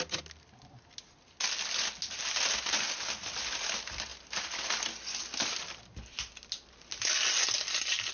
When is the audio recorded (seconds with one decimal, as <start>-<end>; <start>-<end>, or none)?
0.0-8.1